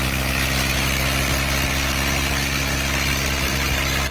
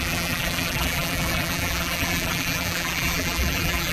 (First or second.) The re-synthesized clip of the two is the second